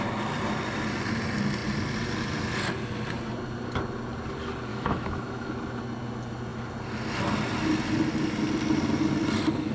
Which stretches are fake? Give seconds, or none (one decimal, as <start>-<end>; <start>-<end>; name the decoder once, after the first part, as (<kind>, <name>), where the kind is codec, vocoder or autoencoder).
4.7-5.5 (autoencoder, DAC-VAE)